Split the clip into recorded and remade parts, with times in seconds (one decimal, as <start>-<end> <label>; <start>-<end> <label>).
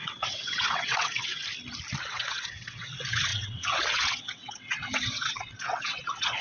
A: 0.0-1.4 remade; 1.4-2.0 recorded; 2.0-6.4 remade